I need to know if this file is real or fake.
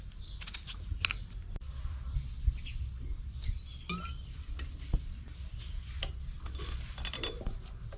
real